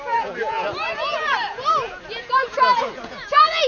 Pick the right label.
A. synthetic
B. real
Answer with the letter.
A